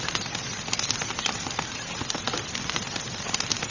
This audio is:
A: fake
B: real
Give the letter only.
B